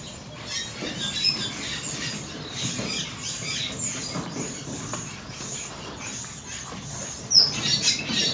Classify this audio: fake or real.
real